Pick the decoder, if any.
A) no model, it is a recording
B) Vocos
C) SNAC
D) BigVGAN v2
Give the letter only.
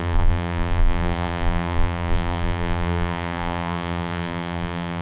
D